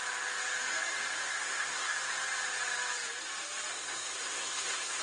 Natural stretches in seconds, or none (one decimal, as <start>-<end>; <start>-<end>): 0.0-1.3; 2.0-3.7